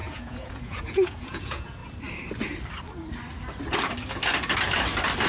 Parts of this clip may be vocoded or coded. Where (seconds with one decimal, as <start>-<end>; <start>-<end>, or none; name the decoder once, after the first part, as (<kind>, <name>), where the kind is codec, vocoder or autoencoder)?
0.0-1.8 (vocoder, Vocos)